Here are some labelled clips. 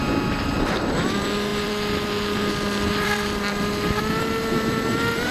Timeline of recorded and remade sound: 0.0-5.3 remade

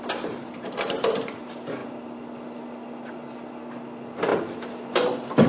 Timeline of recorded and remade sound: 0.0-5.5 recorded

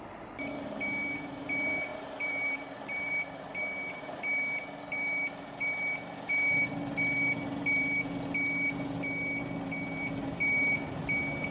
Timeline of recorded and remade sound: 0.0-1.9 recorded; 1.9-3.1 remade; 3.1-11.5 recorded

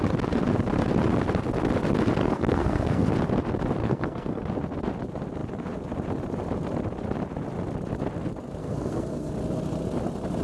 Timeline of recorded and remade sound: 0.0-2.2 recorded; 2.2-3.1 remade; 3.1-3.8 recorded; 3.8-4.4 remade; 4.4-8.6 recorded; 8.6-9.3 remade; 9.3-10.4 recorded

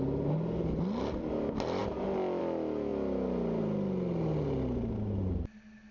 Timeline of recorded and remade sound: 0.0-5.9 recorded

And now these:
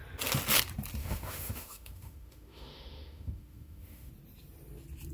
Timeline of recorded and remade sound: 0.0-1.0 recorded; 1.0-4.1 remade; 4.1-5.1 recorded

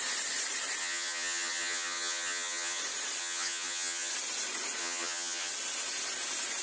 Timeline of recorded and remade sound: 0.0-0.8 recorded; 0.8-2.8 remade; 2.8-3.2 recorded; 3.2-4.1 remade; 4.1-4.8 recorded; 4.8-5.5 remade; 5.5-6.6 recorded